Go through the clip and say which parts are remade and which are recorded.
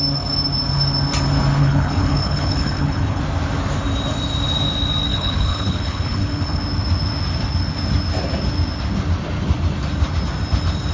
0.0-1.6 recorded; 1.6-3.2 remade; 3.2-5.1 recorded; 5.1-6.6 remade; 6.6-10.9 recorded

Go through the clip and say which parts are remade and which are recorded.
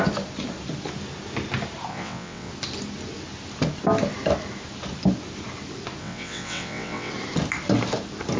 0.0-1.9 recorded; 1.9-2.5 remade; 2.5-6.0 recorded; 6.0-7.1 remade; 7.1-8.4 recorded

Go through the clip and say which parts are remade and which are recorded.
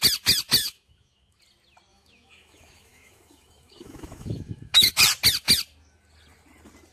0.0-0.6 recorded; 0.6-1.4 remade; 1.4-1.9 recorded; 1.9-4.9 remade; 4.9-6.9 recorded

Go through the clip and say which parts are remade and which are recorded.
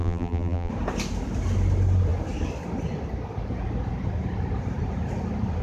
0.0-0.7 remade; 0.7-5.6 recorded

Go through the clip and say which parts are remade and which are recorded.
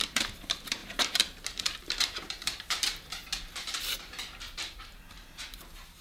0.0-6.0 remade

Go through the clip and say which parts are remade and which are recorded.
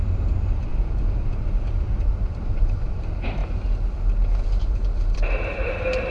0.0-3.4 remade; 3.4-4.6 recorded; 4.6-6.1 remade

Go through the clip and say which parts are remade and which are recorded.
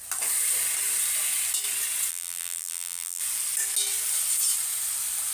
0.0-2.1 recorded; 2.1-3.2 remade; 3.2-5.3 recorded